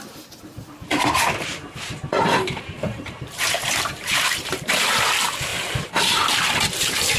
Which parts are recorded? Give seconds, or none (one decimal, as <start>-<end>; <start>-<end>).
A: 0.0-0.9; 5.1-7.2